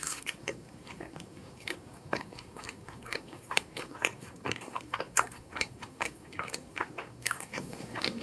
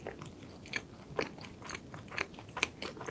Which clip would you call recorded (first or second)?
second